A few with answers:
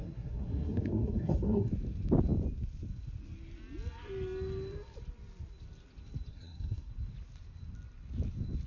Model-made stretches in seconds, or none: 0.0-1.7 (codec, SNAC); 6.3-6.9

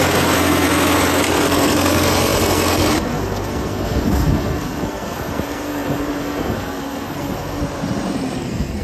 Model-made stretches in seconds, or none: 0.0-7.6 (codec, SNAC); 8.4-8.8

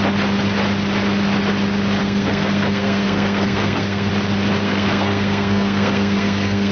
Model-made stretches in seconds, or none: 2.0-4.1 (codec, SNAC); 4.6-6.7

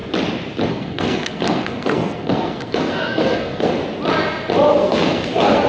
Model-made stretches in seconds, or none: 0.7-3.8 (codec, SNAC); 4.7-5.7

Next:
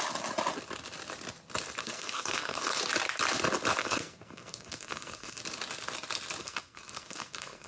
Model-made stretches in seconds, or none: 1.8-2.8 (codec, SNAC); 3.8-5.4; 6.4-7.7